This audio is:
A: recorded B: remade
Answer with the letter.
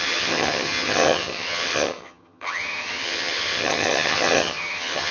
B